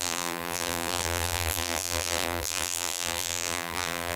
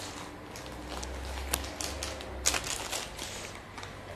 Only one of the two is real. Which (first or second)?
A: second